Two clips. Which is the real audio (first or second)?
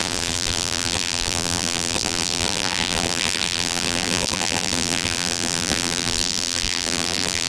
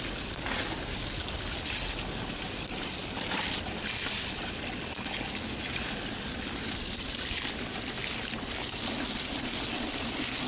second